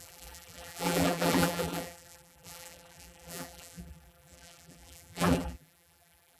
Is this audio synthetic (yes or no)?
yes